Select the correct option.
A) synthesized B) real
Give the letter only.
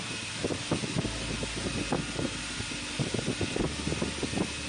B